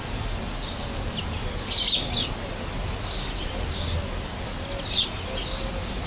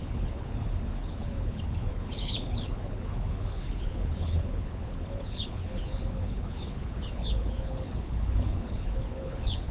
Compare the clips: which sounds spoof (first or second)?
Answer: second